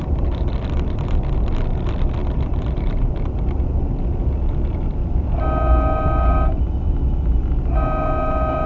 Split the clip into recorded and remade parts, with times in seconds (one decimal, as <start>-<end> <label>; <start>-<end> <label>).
0.0-0.5 remade; 0.5-2.2 recorded; 2.2-3.1 remade; 3.1-8.7 recorded